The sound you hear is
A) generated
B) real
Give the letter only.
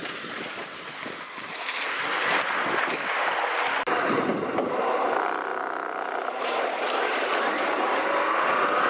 B